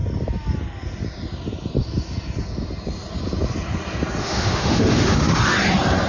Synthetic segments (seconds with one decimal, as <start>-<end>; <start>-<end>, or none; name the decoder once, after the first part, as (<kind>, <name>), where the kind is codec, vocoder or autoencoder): 4.2-5.4 (autoencoder, DAC-VAE)